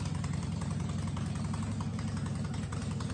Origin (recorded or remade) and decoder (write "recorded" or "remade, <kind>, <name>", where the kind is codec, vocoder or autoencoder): recorded